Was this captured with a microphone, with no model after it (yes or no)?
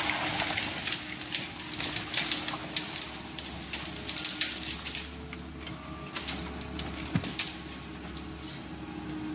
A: yes